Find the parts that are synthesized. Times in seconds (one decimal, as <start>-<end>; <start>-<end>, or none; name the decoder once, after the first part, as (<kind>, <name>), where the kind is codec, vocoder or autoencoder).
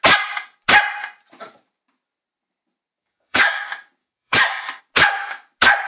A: 3.0-3.6 (codec, DAC); 4.0-4.8